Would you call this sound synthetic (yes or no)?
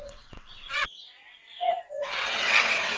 yes